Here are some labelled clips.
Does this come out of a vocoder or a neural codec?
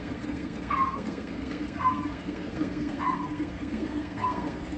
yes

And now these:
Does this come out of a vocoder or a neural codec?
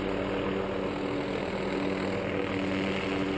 no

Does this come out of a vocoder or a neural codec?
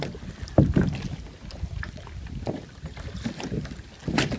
no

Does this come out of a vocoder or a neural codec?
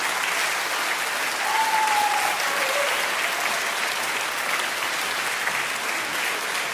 no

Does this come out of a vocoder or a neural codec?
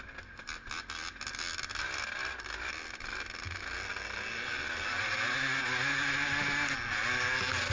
no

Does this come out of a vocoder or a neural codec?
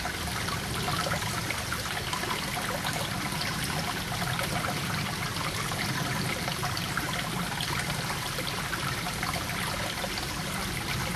no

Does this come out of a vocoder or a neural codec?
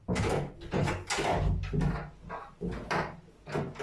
no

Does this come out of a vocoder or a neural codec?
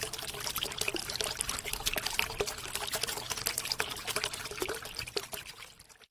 no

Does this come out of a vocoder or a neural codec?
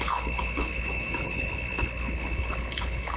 yes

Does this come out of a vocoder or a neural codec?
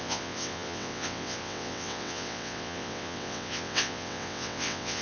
yes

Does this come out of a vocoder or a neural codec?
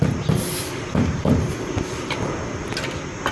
no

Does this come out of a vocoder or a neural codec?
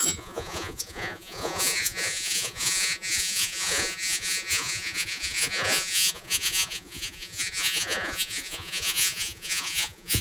yes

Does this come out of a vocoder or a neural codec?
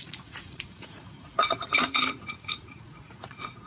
yes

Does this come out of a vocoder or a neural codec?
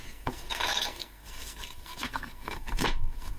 yes